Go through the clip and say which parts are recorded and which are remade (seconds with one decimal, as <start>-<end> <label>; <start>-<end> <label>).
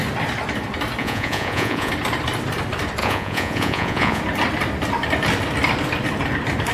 0.0-1.0 recorded; 1.0-1.9 remade; 1.9-3.0 recorded; 3.0-4.2 remade; 4.2-6.7 recorded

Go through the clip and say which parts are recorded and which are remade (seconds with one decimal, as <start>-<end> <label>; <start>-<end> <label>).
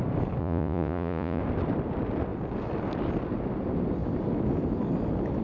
0.0-0.4 recorded; 0.4-1.4 remade; 1.4-5.4 recorded